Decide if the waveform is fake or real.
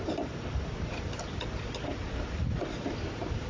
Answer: real